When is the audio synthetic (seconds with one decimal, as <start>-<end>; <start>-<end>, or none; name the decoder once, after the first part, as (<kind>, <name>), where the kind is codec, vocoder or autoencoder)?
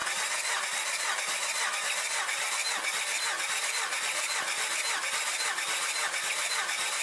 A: none